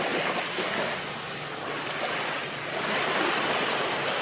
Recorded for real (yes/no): yes